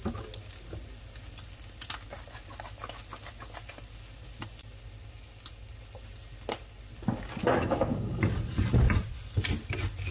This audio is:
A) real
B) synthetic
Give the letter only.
A